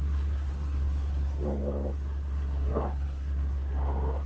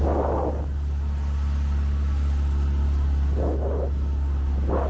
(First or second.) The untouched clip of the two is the second